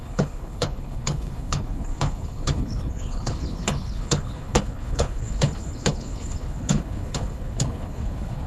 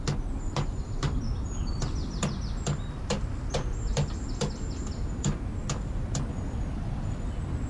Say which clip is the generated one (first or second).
first